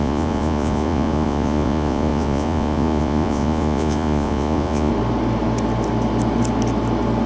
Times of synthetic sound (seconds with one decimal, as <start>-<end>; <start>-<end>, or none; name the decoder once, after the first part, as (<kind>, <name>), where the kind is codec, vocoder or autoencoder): 0.0-4.9 (vocoder, Vocos)